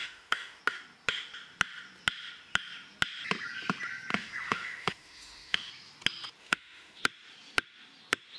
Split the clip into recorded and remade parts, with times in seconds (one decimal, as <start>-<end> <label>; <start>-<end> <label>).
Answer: 0.0-0.6 remade; 0.6-4.1 recorded; 4.1-5.7 remade; 5.7-6.4 recorded; 6.4-7.0 remade; 7.0-8.4 recorded